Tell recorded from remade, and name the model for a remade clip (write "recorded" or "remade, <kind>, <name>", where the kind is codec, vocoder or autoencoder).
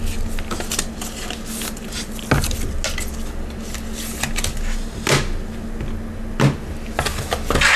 recorded